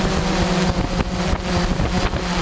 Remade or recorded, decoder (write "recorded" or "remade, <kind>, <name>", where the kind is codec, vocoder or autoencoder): recorded